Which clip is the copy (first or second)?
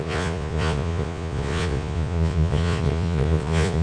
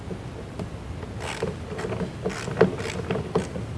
first